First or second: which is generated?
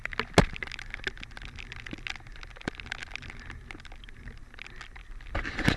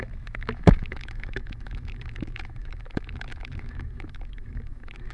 second